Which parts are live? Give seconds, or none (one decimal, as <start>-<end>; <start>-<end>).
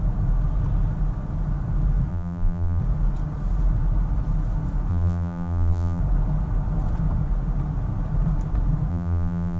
0.0-2.1; 2.8-4.9; 6.0-8.9